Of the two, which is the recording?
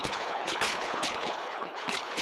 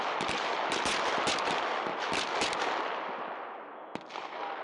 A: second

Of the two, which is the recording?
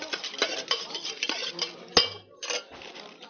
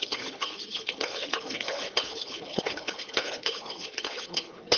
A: first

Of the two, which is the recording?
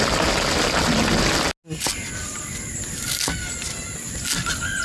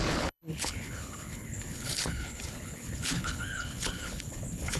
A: first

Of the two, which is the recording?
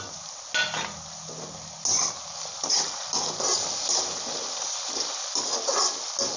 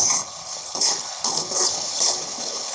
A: first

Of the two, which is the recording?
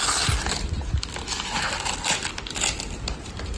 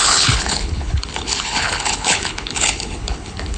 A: first